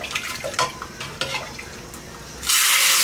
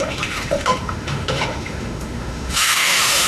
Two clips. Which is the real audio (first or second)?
first